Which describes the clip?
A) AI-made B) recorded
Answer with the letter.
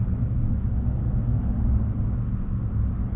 B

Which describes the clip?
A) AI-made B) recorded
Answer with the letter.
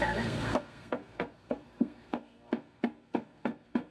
A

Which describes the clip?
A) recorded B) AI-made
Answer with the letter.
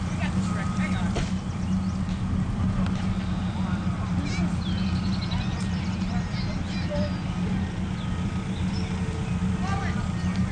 A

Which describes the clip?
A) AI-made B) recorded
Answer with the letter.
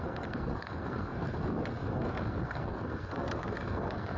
A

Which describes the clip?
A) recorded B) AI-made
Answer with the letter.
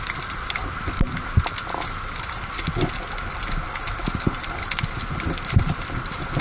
A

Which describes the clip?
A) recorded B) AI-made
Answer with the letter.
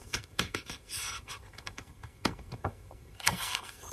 B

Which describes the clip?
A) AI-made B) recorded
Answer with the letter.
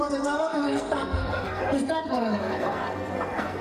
A